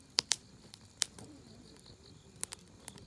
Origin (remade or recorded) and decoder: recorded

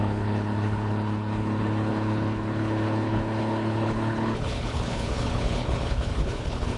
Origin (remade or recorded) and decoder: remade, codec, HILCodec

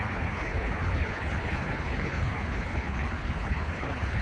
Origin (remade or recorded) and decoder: remade, codec, HILCodec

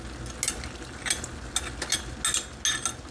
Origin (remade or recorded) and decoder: recorded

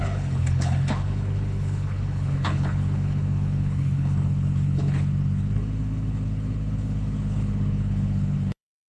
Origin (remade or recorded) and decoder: remade, codec, HILCodec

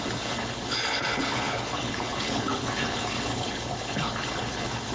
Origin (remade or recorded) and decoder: remade, codec, HILCodec